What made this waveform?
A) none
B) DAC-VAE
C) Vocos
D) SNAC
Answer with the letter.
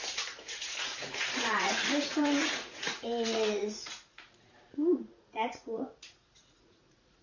C